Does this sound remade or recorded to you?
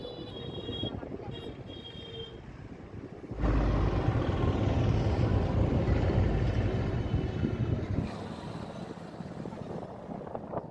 recorded